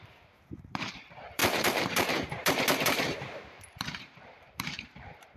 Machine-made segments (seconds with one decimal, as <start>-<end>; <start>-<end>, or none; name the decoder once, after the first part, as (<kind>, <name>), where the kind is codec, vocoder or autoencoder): 0.0-5.4 (vocoder, BigVGAN v2)